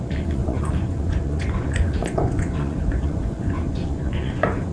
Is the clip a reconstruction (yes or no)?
yes